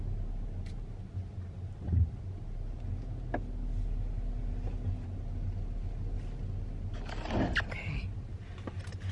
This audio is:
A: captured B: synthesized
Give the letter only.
A